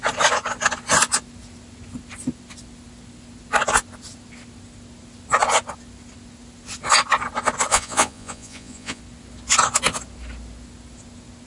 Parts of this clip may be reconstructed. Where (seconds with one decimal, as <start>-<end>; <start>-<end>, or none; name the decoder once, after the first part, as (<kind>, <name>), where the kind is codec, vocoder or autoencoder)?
7.7-9.0 (vocoder, Vocos)